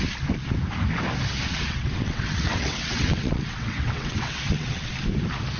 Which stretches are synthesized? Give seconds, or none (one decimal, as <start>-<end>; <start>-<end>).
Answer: 1.5-4.9